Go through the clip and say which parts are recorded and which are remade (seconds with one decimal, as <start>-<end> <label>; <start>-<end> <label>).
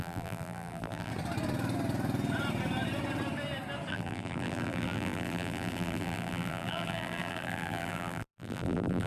0.0-1.1 remade; 1.1-3.9 recorded; 3.9-9.1 remade